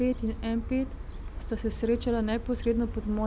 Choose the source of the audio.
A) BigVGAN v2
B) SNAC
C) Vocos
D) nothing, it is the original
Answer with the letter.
D